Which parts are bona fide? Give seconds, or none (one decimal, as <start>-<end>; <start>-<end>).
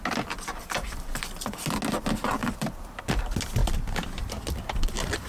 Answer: 0.0-2.4; 3.2-5.3